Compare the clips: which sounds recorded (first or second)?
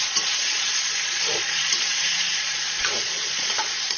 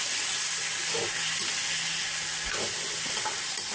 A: second